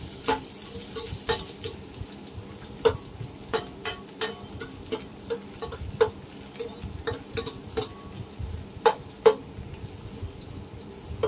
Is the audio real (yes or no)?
yes